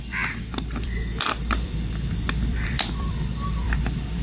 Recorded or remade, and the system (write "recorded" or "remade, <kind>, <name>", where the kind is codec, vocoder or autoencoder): remade, vocoder, BigVGAN v2